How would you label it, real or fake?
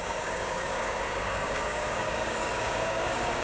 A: fake